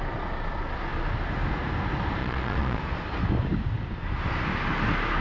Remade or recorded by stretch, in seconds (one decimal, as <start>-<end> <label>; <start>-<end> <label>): 0.0-2.2 recorded; 2.2-2.8 remade; 2.8-5.2 recorded